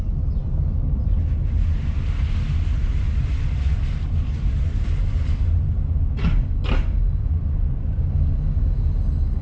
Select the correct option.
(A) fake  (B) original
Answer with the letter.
B